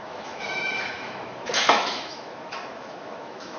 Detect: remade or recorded remade